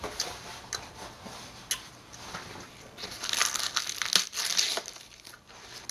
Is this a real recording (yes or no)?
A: yes